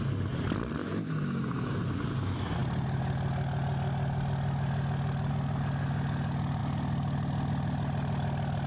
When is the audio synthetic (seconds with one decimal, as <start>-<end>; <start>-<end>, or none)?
0.8-1.8